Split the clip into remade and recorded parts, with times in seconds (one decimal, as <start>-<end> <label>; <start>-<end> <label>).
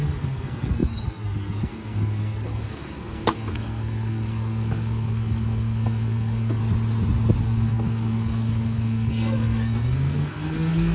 0.0-6.6 remade; 6.6-7.4 recorded; 7.4-10.9 remade